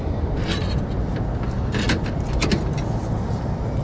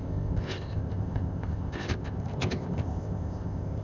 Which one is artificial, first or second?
second